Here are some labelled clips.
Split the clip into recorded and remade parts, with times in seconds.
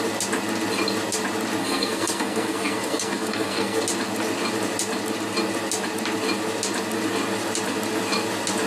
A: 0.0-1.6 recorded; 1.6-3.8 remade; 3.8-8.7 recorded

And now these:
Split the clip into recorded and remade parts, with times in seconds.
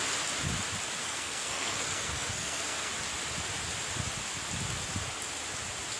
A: 0.0-1.0 recorded; 1.0-2.9 remade; 2.9-6.0 recorded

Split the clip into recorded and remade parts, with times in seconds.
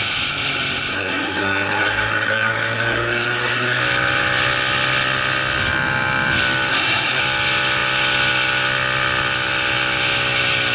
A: 0.0-0.9 recorded; 0.9-3.8 remade; 3.8-6.7 recorded; 6.7-7.2 remade; 7.2-10.7 recorded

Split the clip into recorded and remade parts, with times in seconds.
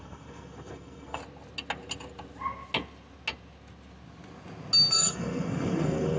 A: 0.0-1.2 remade; 1.2-4.9 recorded; 4.9-6.2 remade